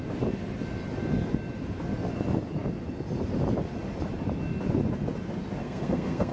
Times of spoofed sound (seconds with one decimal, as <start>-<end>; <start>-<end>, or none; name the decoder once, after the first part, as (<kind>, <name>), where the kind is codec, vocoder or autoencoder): 5.6-6.3 (codec, SNAC)